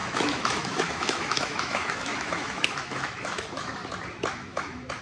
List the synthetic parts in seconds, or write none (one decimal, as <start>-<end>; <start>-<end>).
0.0-3.8; 4.3-5.0